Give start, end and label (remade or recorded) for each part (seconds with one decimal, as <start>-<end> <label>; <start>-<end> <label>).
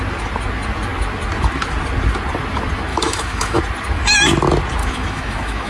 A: 0.0-2.9 recorded; 2.9-3.6 remade; 3.6-4.8 recorded; 4.8-5.7 remade